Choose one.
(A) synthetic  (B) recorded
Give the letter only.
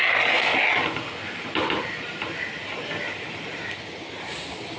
B